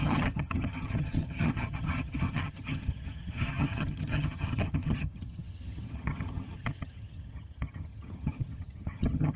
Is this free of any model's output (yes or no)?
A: no